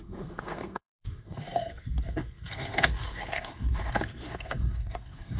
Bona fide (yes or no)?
no